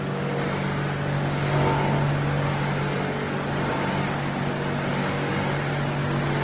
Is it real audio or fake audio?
real